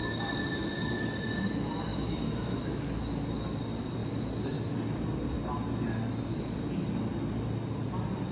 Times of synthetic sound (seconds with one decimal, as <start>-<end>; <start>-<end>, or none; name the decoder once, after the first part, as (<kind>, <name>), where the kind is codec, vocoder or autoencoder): 1.9-2.9 (autoencoder, DAC-VAE)